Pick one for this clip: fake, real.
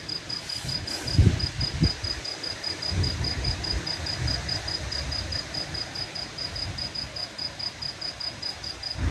real